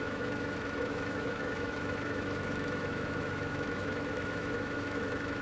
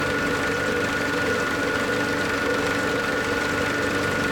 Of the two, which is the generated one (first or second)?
first